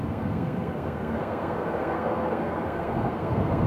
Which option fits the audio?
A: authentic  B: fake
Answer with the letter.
B